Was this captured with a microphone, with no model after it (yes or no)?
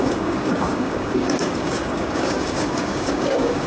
no